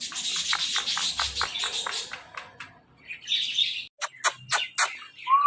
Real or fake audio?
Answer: real